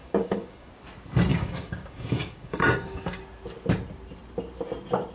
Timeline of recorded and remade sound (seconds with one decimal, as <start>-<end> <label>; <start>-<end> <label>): 0.0-0.7 remade; 0.7-1.3 recorded; 1.3-3.2 remade; 3.2-5.1 recorded